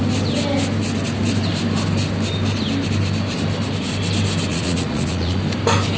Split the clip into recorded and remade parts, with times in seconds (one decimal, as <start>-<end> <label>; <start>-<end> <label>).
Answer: 0.0-4.5 recorded; 4.5-5.4 remade; 5.4-6.0 recorded